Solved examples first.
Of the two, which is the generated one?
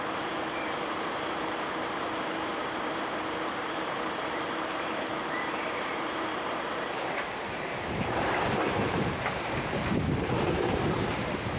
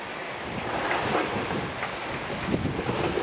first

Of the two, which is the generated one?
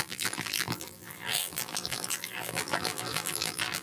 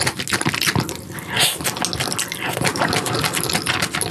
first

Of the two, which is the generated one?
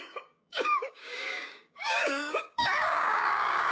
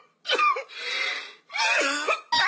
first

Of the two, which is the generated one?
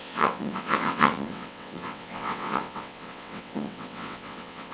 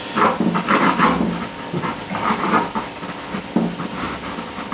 first